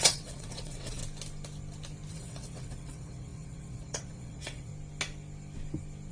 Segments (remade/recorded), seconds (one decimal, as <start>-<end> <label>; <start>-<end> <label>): 0.0-1.0 remade; 1.0-2.1 recorded; 2.1-4.7 remade; 4.7-6.1 recorded